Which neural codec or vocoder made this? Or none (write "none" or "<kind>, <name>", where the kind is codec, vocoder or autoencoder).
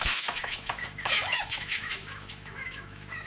autoencoder, DAC-VAE